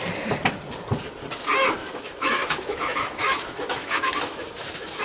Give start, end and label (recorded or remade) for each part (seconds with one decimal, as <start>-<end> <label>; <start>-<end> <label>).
0.0-1.8 recorded; 1.8-5.0 remade